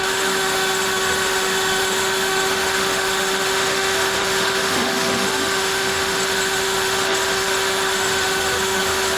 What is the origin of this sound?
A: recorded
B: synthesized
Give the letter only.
B